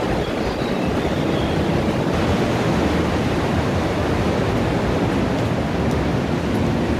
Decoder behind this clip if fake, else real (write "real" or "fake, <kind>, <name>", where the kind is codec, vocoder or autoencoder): real